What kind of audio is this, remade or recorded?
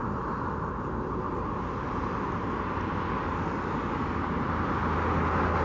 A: recorded